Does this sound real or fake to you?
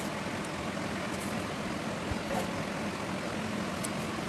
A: real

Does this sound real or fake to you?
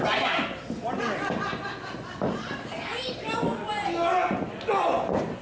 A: real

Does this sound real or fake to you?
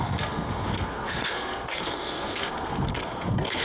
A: fake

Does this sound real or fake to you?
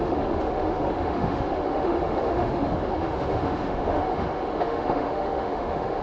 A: fake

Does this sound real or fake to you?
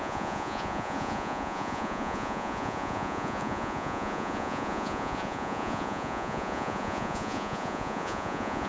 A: fake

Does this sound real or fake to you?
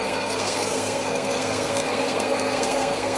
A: fake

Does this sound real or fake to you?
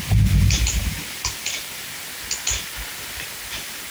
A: real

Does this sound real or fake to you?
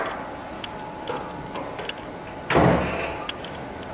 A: real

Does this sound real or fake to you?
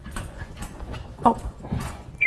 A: fake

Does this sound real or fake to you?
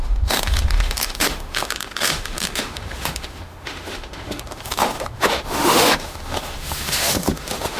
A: fake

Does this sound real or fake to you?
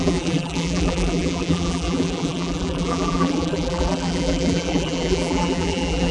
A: fake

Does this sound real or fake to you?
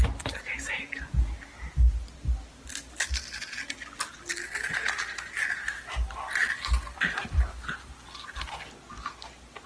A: real